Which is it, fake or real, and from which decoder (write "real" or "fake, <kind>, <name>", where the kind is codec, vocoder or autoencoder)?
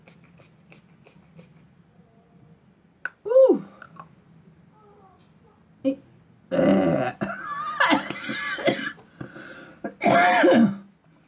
real